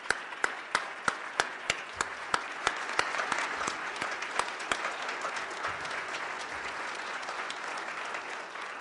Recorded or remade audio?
remade